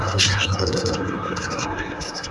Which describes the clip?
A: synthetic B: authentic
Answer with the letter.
A